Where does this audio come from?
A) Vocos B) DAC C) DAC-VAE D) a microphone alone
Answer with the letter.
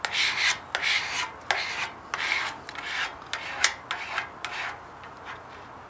D